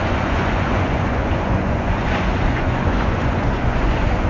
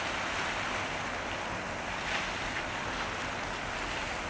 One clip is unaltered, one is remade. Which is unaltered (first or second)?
second